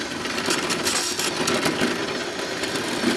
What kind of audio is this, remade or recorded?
recorded